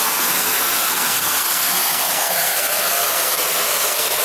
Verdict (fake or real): fake